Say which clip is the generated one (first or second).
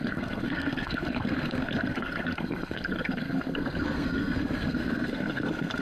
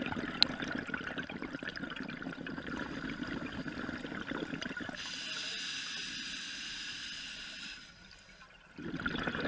first